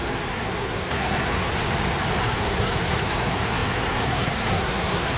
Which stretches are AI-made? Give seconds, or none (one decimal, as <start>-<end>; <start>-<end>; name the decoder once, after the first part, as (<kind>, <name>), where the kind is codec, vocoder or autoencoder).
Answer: 0.0-1.5 (codec, SNAC); 2.2-5.2